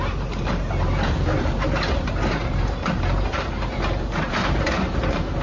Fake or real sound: fake